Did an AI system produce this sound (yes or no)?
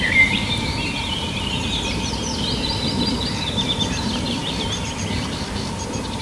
yes